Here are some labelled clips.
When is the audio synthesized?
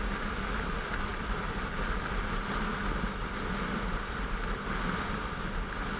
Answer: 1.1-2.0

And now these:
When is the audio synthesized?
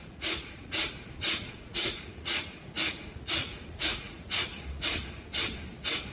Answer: 0.0-0.9; 1.3-5.0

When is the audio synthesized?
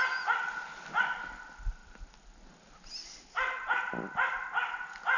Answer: none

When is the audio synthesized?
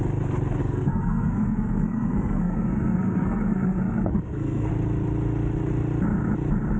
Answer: 0.6-4.7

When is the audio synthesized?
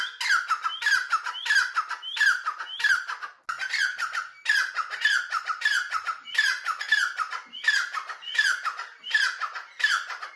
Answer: none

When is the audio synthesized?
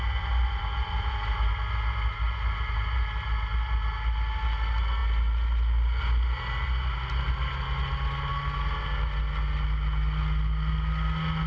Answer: none